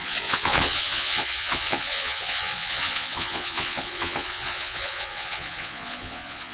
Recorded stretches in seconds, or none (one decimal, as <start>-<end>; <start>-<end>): none